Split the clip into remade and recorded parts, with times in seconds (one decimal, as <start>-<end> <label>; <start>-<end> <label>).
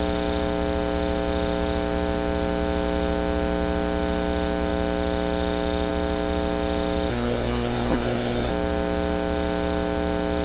0.0-7.1 recorded; 7.1-8.5 remade; 8.5-10.4 recorded